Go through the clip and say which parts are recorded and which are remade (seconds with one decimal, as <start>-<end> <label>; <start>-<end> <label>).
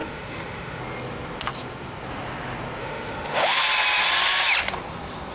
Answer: 0.0-0.8 remade; 0.8-2.8 recorded; 2.8-3.6 remade; 3.6-5.3 recorded